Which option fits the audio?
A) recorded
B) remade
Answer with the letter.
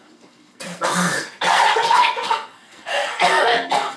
B